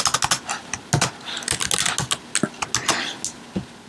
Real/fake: real